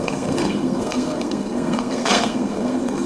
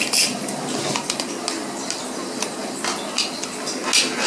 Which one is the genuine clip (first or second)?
second